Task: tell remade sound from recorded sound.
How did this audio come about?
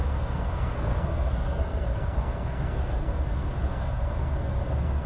remade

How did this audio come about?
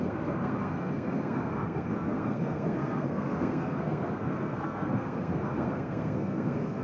remade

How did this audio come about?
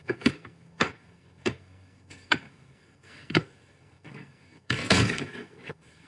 remade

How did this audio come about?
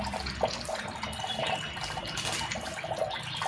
recorded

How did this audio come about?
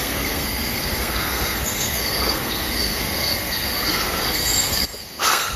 remade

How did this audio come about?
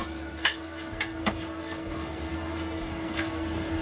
remade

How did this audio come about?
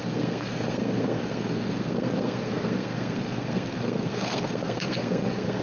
remade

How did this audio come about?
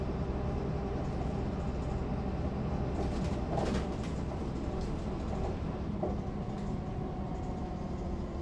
recorded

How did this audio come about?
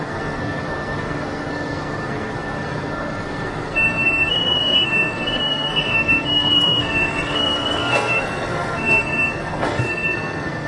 remade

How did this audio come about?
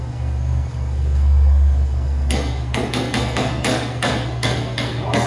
remade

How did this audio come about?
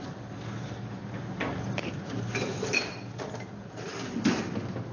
recorded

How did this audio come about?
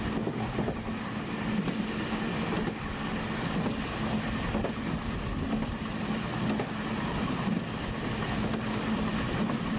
recorded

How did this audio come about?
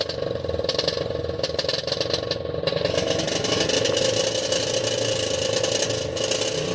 recorded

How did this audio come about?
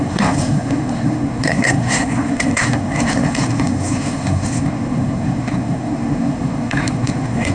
remade